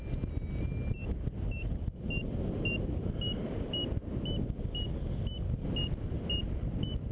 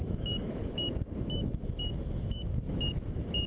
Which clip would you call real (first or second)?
first